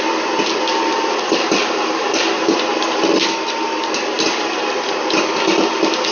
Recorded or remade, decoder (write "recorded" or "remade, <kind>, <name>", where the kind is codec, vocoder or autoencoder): recorded